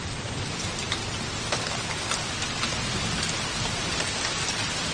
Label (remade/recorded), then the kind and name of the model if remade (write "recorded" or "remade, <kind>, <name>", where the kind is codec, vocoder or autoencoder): recorded